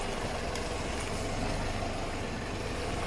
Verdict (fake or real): real